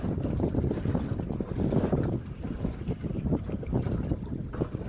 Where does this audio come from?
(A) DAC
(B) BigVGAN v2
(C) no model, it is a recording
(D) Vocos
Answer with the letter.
C